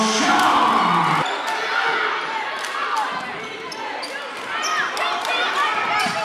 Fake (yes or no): no